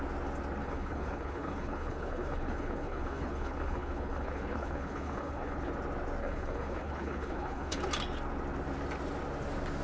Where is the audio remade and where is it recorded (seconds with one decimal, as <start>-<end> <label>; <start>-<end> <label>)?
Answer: 0.0-0.6 recorded; 0.6-5.7 remade; 5.7-6.2 recorded; 6.2-7.8 remade; 7.8-9.8 recorded